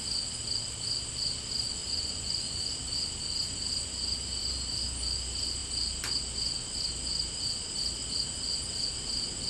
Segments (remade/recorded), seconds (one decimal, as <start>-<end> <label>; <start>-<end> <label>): 0.0-1.8 recorded; 1.8-2.7 remade; 2.7-9.5 recorded